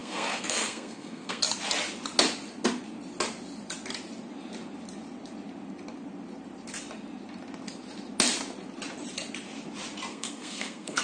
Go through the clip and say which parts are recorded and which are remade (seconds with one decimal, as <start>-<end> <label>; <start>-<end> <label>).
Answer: 0.0-1.4 remade; 1.4-10.1 recorded; 10.1-11.0 remade